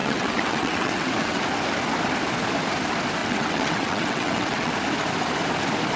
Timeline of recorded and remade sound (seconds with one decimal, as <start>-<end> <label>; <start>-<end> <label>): 0.0-1.4 remade; 1.4-3.2 recorded; 3.2-4.7 remade; 4.7-6.0 recorded